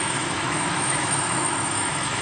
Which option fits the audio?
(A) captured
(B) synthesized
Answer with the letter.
B